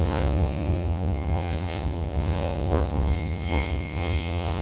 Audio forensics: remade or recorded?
remade